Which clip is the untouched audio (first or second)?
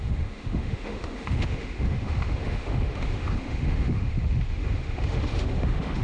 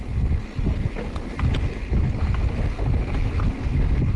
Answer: second